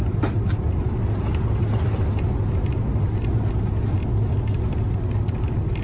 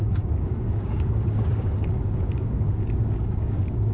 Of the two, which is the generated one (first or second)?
second